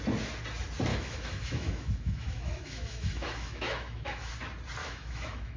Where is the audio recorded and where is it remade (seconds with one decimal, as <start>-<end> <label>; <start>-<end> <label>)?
0.0-0.9 recorded; 0.9-4.3 remade; 4.3-4.8 recorded; 4.8-5.6 remade